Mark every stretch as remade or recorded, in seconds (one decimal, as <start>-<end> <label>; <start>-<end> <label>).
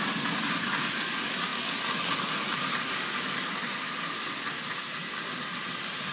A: 0.0-6.1 recorded